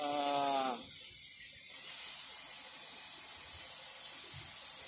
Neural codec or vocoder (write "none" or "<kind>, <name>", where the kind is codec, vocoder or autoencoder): none